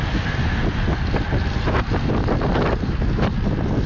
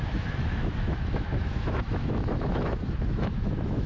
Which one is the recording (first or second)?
first